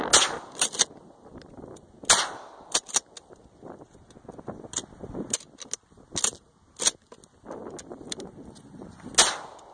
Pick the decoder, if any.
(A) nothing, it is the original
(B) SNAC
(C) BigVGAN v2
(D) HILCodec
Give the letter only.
A